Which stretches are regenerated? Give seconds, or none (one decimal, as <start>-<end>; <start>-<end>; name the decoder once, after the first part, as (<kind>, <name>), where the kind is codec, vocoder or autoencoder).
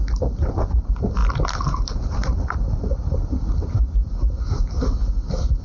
none